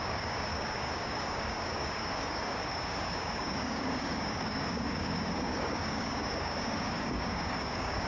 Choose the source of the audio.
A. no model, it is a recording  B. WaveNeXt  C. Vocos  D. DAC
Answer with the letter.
D